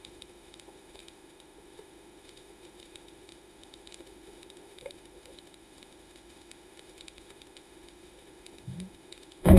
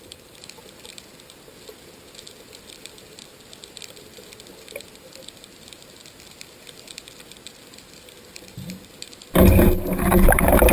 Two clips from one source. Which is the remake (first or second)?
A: first